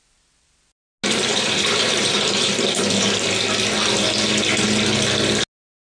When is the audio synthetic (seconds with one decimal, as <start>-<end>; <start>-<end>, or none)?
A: 1.3-2.5